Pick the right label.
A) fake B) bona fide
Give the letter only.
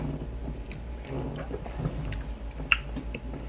B